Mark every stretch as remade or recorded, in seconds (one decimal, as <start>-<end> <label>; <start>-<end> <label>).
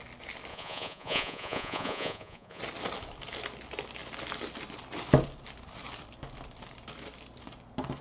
0.0-0.5 recorded; 0.5-2.6 remade; 2.6-8.0 recorded